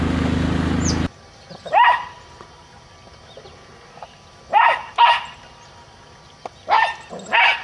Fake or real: real